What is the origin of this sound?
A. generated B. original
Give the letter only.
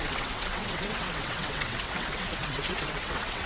A